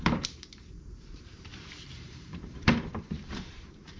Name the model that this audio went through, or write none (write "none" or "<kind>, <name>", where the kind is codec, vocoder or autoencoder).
vocoder, BigVGAN v2